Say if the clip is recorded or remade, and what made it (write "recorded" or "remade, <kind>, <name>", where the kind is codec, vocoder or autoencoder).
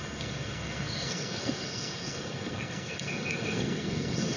remade, codec, SNAC